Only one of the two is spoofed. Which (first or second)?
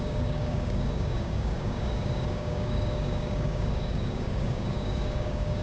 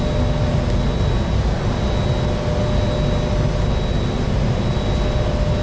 first